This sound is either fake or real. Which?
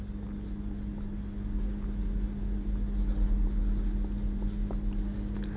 real